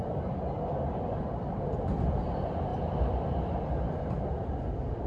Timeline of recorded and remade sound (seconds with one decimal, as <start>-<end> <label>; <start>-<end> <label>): 0.0-5.1 recorded